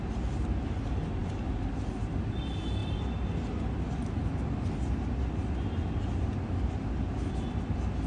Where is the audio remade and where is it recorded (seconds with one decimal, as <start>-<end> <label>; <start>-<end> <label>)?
0.0-8.1 recorded